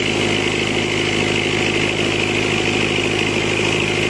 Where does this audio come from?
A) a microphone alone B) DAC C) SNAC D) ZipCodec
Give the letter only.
A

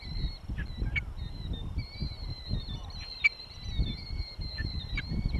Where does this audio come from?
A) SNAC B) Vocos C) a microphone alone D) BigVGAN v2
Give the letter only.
C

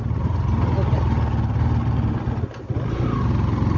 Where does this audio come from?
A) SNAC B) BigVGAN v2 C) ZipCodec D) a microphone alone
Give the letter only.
D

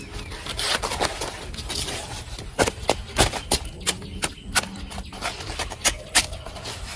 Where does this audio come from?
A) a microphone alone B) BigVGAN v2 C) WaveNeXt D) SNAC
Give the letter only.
A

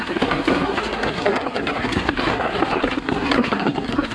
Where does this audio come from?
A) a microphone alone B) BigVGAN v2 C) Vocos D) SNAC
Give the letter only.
D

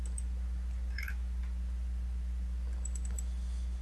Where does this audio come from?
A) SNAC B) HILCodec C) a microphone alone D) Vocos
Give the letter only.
C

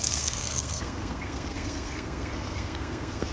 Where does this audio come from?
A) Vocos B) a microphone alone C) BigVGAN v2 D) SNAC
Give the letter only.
D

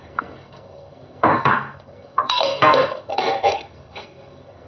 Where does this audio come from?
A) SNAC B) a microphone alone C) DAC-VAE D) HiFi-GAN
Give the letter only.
A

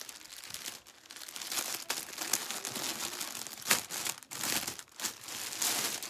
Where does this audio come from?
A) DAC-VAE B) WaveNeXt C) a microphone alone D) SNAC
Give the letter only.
C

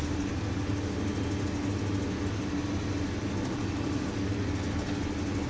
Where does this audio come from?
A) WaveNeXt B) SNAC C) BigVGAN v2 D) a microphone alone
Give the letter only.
D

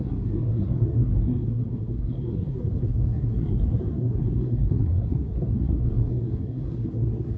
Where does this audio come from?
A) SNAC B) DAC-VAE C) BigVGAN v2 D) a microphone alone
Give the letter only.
A